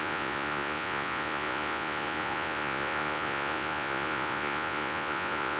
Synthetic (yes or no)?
yes